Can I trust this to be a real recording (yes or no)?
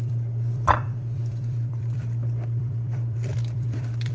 no